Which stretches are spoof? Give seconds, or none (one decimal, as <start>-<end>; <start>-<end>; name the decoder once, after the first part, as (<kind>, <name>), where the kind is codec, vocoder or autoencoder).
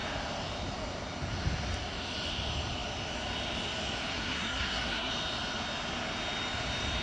4.1-5.1 (codec, SNAC)